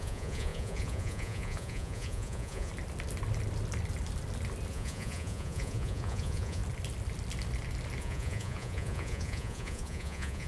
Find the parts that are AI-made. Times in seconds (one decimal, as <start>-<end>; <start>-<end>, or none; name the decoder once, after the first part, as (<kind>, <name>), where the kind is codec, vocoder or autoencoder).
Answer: 0.0-2.7 (vocoder, Vocos); 4.7-6.6; 8.0-10.5